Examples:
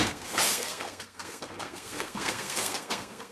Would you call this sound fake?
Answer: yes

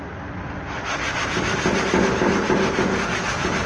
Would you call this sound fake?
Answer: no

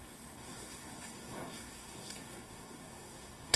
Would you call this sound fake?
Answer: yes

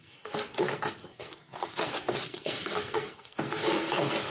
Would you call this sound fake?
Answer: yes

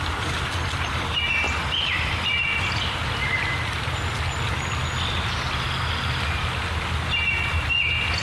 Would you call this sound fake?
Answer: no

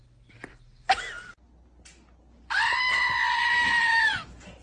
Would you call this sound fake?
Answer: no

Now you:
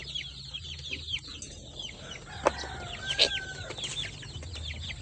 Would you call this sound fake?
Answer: no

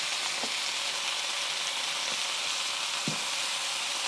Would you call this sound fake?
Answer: no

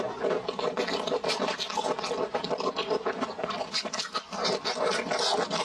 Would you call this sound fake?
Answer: no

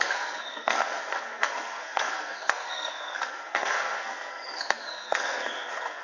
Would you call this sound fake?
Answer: yes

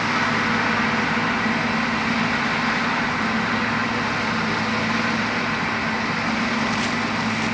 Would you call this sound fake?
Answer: no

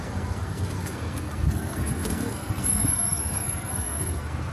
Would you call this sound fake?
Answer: yes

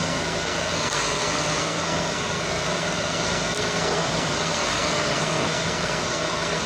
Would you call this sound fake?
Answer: yes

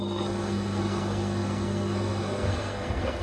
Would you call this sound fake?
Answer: yes